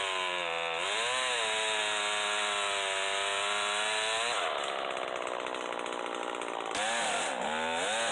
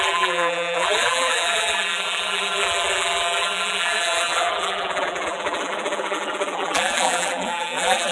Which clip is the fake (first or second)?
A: second